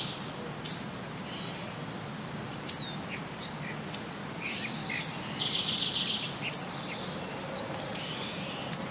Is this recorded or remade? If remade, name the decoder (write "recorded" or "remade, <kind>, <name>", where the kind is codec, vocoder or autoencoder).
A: recorded